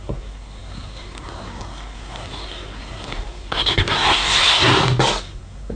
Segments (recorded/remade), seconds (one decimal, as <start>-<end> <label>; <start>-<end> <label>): 0.0-4.7 remade; 4.7-5.2 recorded; 5.2-5.8 remade

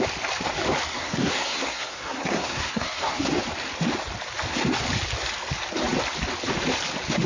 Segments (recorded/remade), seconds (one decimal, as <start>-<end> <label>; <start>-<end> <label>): 0.0-0.9 recorded; 0.9-3.3 remade; 3.3-7.3 recorded

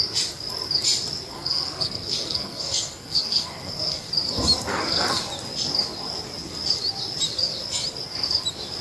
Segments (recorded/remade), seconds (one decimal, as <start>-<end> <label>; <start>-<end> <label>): 0.0-1.3 recorded; 1.3-4.1 remade; 4.1-4.7 recorded; 4.7-5.2 remade; 5.2-8.8 recorded

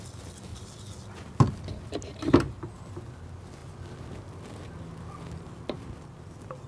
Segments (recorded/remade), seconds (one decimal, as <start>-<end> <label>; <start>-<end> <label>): 0.0-6.7 recorded

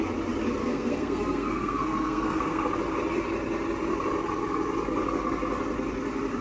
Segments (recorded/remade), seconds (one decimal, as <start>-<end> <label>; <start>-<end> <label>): 0.0-0.6 recorded; 0.6-2.7 remade; 2.7-6.4 recorded

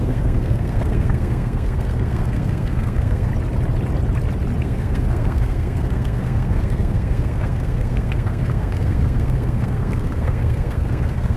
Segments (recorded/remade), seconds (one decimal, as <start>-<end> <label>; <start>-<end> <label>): 0.0-3.3 remade; 3.3-4.6 recorded; 4.6-11.4 remade

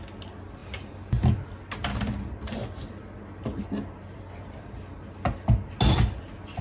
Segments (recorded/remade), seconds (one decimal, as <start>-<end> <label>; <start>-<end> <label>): 0.0-6.6 recorded